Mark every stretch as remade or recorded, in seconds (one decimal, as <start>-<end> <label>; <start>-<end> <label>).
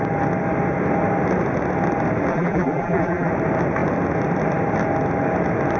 0.0-2.3 recorded; 2.3-3.3 remade; 3.3-5.8 recorded